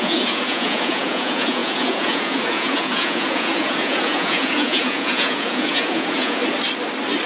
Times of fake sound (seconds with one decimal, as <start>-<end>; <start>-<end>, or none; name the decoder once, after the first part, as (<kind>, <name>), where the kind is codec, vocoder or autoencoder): 0.0-6.4 (vocoder, Vocos)